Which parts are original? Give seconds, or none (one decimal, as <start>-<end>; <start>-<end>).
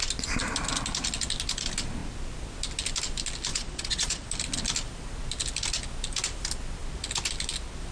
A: 0.0-3.5; 4.3-7.9